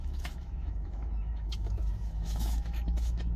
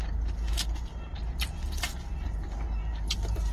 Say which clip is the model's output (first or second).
first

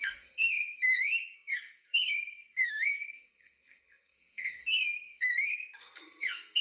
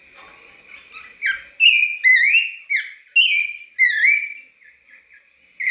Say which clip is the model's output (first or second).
first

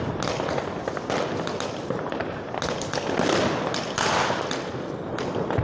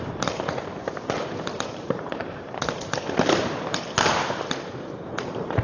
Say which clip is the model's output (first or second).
second